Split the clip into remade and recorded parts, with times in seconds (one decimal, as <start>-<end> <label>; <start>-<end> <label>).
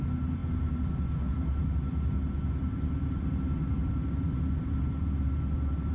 0.0-5.9 remade